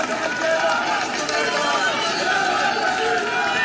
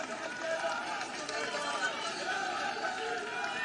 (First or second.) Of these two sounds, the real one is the first